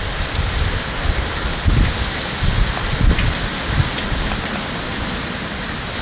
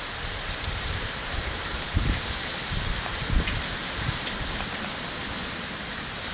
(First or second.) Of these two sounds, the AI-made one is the second